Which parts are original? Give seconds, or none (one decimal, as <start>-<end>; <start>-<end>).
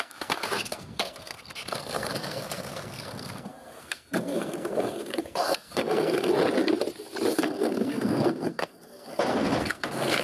6.3-7.4